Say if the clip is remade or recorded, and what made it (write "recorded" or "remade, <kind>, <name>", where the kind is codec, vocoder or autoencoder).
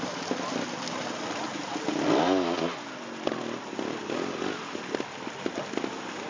recorded